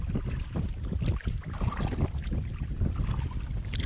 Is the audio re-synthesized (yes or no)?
no